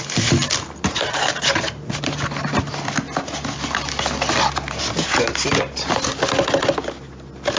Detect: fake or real real